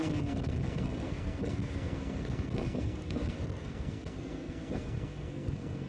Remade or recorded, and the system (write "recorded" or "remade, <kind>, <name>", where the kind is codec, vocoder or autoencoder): remade, codec, SNAC